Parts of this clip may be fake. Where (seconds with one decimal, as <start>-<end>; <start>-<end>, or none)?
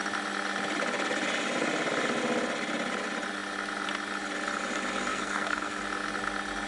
5.1-5.8